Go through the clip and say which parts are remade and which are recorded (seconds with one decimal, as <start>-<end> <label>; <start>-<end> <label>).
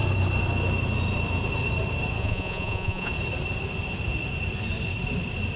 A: 0.0-2.2 recorded; 2.2-3.1 remade; 3.1-5.6 recorded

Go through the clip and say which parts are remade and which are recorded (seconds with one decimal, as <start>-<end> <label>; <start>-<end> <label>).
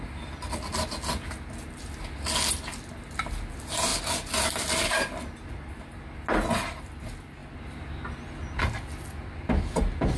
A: 0.0-10.2 recorded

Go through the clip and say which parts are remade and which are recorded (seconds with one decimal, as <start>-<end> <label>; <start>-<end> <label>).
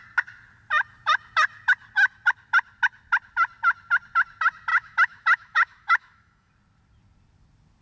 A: 0.0-4.7 recorded; 4.7-6.5 remade; 6.5-7.8 recorded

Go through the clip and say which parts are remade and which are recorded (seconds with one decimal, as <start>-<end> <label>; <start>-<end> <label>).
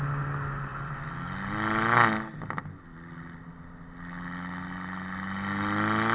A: 0.0-6.1 recorded